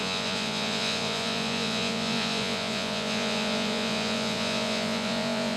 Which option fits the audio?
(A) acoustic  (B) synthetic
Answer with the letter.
B